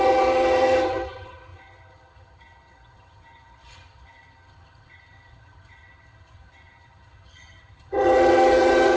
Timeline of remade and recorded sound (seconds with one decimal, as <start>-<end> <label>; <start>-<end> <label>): 0.0-9.0 remade